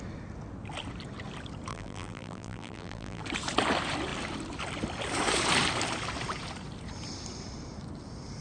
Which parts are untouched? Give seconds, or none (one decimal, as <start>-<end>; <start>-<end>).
0.0-1.7; 3.2-8.4